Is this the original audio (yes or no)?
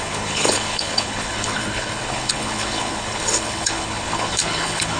no